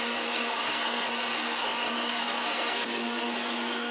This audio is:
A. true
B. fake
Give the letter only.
B